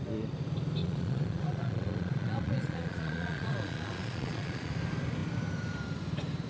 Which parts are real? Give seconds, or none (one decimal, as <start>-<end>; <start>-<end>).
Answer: 0.0-0.8; 4.7-6.5